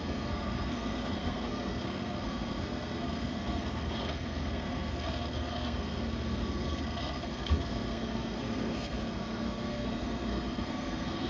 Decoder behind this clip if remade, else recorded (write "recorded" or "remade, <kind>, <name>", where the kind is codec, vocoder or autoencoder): remade, codec, SNAC